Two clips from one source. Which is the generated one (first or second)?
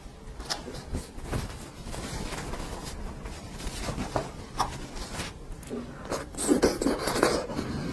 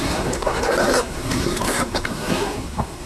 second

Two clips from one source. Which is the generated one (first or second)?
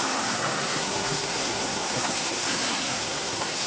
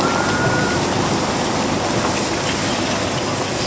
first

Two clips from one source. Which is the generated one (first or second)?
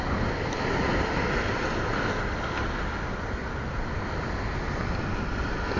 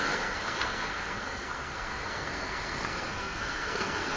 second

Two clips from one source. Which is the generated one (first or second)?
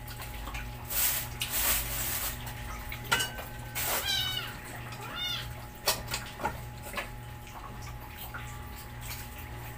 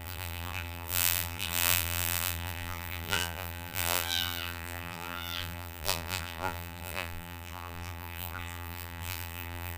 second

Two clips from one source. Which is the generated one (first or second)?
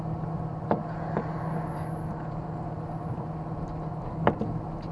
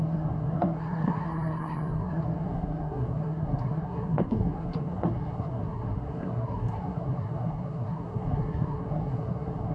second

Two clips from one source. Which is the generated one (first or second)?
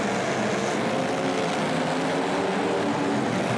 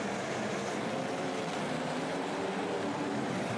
second